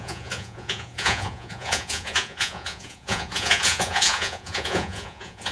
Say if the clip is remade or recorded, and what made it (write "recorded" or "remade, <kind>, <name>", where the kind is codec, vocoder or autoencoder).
remade, vocoder, Vocos